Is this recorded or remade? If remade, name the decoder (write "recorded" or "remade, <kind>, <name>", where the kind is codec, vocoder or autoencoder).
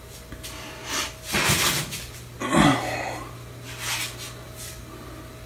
recorded